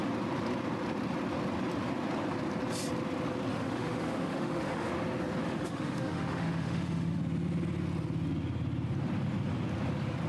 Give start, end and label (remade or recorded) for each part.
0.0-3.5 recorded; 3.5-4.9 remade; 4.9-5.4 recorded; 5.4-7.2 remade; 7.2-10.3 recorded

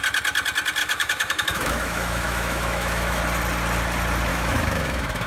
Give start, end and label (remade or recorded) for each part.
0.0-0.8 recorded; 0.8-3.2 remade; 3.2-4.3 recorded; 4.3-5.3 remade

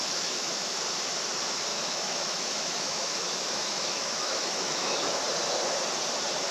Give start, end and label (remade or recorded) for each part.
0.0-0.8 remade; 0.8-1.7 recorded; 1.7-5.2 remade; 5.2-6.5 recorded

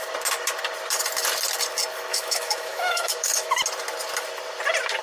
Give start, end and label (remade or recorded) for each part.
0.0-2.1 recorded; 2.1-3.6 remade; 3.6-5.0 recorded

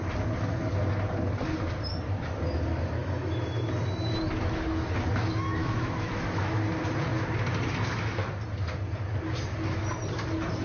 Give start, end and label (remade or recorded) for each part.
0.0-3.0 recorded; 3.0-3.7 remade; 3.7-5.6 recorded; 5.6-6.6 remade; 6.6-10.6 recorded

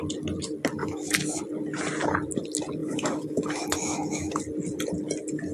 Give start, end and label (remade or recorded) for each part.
0.0-0.8 recorded; 0.8-1.4 remade; 1.4-2.8 recorded; 2.8-4.4 remade; 4.4-5.5 recorded

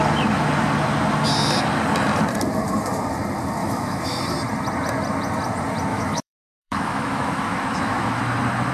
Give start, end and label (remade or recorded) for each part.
0.0-3.6 recorded; 3.6-4.2 remade; 4.2-5.9 recorded; 5.9-8.2 remade; 8.2-8.7 recorded

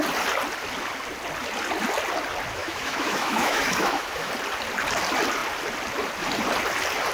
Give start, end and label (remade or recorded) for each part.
0.0-2.6 recorded; 2.6-4.3 remade; 4.3-7.1 recorded